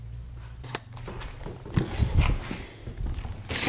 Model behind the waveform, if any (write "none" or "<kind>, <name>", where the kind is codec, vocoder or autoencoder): none